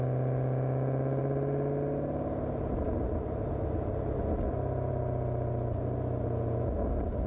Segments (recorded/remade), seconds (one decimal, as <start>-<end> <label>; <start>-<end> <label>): 0.0-7.3 recorded